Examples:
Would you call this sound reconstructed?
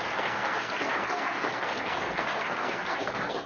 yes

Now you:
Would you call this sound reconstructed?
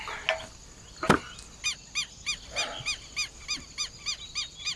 no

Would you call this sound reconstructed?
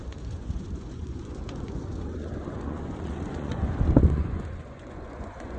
yes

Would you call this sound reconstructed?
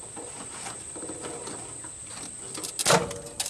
no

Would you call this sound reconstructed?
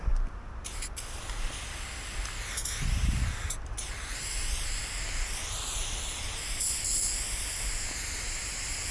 no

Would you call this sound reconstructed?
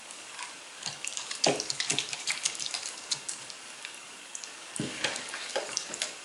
yes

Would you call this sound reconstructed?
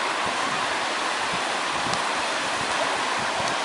no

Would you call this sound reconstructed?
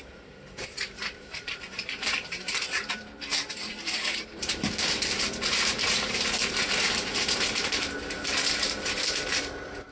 yes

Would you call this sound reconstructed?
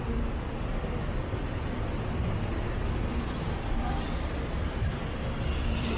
no